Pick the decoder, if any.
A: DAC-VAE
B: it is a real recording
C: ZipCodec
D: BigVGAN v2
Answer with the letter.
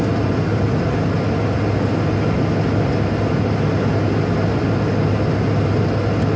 B